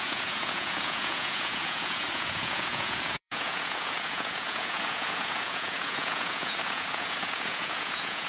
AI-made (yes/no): yes